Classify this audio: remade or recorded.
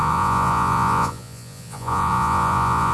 remade